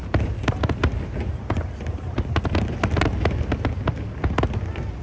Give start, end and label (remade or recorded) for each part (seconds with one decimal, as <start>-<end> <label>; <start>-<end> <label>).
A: 0.0-3.0 remade; 3.0-5.0 recorded